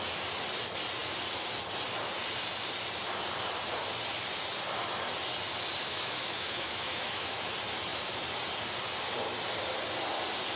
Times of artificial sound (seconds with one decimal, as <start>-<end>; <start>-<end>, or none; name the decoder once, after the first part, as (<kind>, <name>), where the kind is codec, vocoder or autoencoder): 5.8-7.5 (autoencoder, DAC-VAE)